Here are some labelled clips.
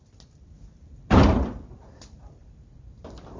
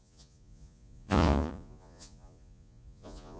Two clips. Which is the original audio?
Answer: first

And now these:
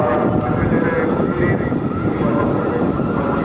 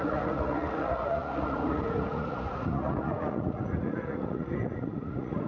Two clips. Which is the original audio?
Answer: first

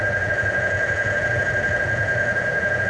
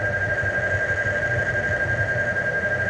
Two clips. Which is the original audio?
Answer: second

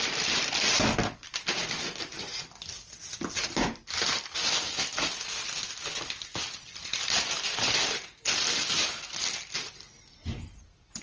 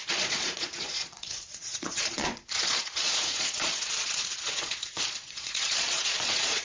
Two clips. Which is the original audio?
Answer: first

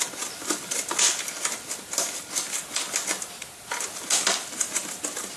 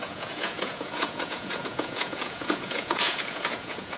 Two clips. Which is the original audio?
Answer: first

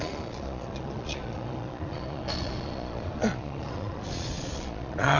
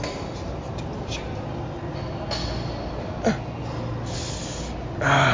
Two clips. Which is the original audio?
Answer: second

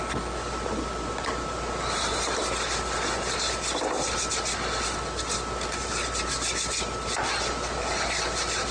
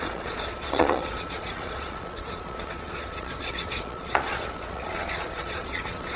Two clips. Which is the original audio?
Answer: first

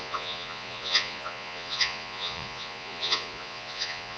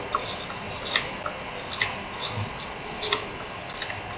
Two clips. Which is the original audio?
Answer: second